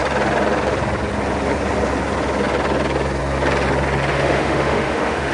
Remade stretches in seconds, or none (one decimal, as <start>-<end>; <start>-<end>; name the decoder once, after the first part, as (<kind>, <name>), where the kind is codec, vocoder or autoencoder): 4.1-5.3 (autoencoder, DAC-VAE)